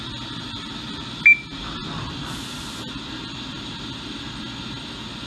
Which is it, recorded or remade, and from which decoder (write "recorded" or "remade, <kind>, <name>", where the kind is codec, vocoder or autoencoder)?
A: recorded